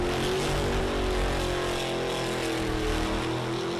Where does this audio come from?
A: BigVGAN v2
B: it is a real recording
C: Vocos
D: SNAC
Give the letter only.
B